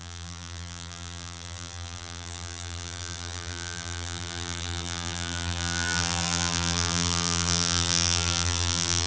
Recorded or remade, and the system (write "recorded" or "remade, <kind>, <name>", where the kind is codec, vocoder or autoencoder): remade, vocoder, BigVGAN v2